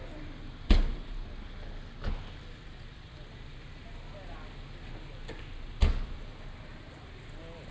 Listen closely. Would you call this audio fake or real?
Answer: real